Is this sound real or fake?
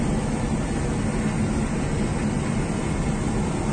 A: real